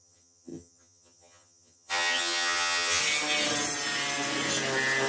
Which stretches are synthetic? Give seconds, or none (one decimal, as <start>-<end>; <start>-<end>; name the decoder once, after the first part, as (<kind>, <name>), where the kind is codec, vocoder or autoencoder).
0.0-3.0 (vocoder, HiFi-GAN)